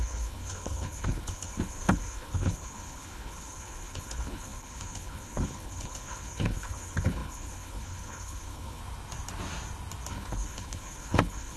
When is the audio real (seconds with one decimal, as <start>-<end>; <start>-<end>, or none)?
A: 8.8-10.1